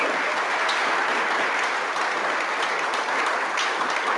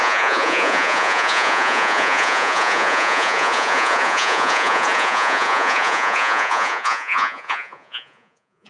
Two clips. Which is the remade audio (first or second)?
second